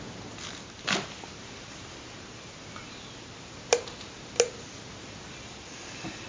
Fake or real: real